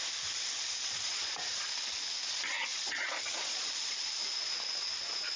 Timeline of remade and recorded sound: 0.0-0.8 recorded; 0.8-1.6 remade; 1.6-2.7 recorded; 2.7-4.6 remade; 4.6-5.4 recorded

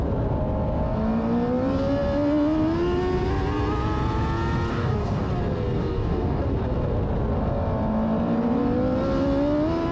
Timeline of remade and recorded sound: 0.0-4.7 recorded; 4.7-5.3 remade; 5.3-5.8 recorded; 5.8-6.4 remade; 6.4-9.9 recorded

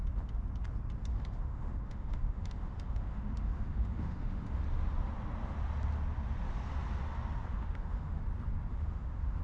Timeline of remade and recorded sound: 0.0-1.1 recorded; 1.1-4.6 remade; 4.6-7.5 recorded; 7.5-8.2 remade; 8.2-8.7 recorded; 8.7-9.4 remade

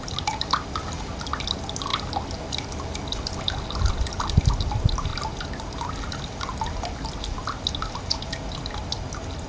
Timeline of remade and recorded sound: 0.0-9.5 recorded

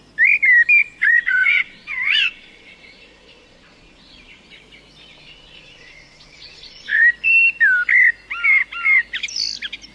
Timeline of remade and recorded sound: 0.0-0.8 recorded; 0.8-4.6 remade; 4.6-5.1 recorded; 5.1-7.0 remade; 7.0-9.9 recorded

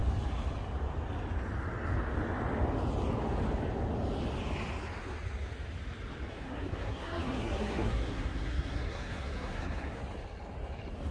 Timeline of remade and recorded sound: 0.0-6.3 recorded; 6.3-10.0 remade; 10.0-11.1 recorded

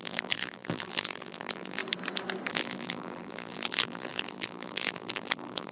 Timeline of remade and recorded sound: 0.0-1.8 remade; 1.8-2.5 recorded; 2.5-5.7 remade

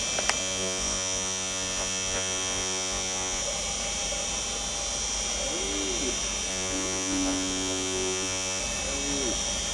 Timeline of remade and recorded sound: 0.0-0.4 recorded; 0.4-3.4 remade; 3.4-6.5 recorded; 6.5-8.6 remade; 8.6-9.7 recorded